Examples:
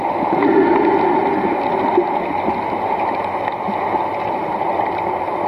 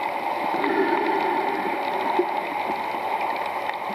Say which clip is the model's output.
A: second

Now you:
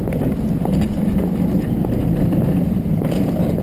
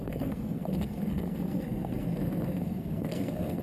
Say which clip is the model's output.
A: second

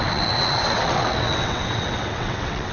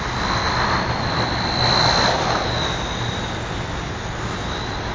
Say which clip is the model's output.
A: first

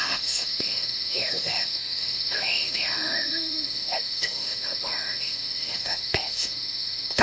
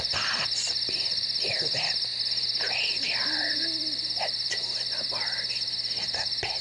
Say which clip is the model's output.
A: first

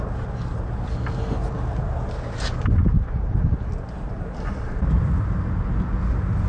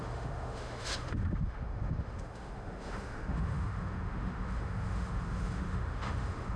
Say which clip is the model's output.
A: second